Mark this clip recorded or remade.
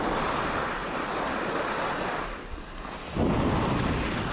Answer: recorded